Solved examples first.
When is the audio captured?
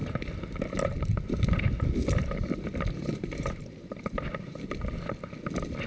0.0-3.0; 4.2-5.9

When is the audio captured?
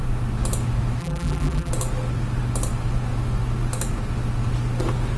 0.0-1.0; 1.7-5.2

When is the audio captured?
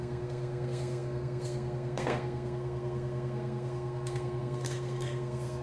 none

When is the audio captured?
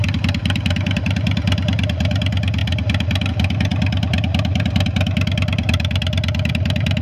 0.0-0.4; 1.0-7.0